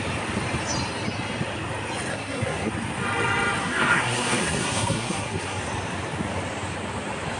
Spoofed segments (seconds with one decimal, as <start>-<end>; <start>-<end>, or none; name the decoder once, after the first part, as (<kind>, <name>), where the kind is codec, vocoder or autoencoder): 2.1-2.7 (codec, SNAC); 3.6-5.6